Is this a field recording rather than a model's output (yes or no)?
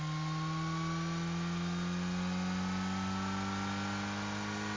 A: yes